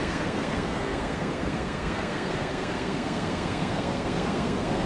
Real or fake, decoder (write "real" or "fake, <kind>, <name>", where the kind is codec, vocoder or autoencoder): fake, codec, SNAC